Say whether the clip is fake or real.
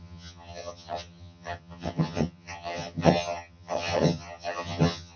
fake